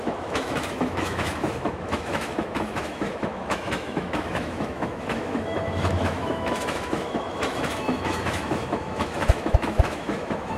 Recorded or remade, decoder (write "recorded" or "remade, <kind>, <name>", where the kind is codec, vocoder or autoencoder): remade, autoencoder, DAC-VAE